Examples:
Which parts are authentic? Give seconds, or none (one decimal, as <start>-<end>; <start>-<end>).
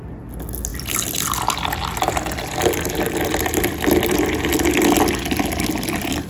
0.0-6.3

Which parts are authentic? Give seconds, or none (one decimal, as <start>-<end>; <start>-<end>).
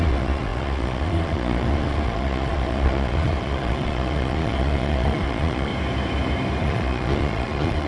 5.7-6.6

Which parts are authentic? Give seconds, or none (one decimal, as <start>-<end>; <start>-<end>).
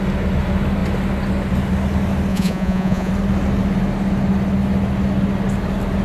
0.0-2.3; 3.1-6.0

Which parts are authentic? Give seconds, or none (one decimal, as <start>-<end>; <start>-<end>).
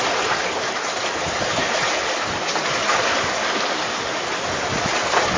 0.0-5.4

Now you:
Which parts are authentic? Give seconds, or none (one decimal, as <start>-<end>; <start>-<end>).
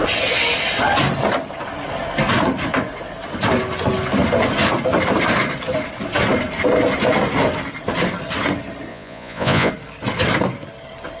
0.0-8.9; 9.7-11.2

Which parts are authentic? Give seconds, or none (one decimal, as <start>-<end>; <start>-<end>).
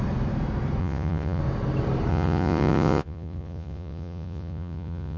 0.0-0.8; 1.4-2.1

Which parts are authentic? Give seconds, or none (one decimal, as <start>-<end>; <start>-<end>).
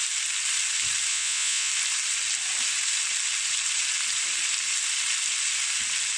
0.0-1.1; 1.7-6.2